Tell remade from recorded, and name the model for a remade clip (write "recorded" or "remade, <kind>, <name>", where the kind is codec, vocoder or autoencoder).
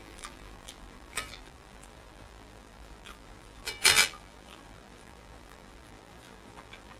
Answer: remade, vocoder, BigVGAN v2